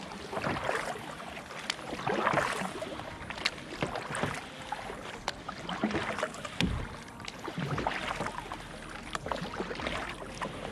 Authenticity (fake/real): real